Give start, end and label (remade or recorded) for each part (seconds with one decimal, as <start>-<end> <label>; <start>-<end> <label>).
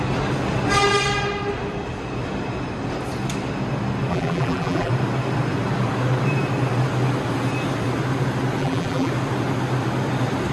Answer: 0.0-4.1 recorded; 4.1-4.9 remade; 4.9-8.6 recorded; 8.6-9.1 remade; 9.1-10.5 recorded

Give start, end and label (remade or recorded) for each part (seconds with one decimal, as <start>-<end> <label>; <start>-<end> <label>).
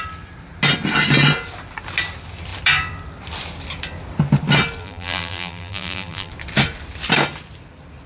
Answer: 0.0-4.8 recorded; 4.8-6.3 remade; 6.3-8.1 recorded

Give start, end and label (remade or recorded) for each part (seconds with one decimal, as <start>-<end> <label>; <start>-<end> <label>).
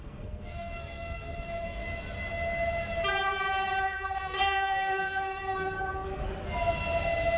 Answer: 0.0-1.8 remade; 1.8-3.8 recorded; 3.8-6.2 remade; 6.2-7.4 recorded